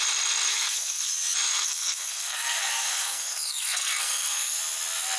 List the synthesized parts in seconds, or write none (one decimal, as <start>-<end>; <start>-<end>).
0.5-1.1; 1.5-4.6